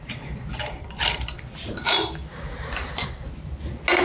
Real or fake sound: real